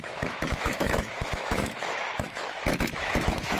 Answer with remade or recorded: remade